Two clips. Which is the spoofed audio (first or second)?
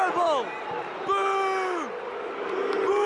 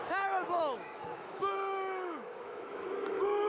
second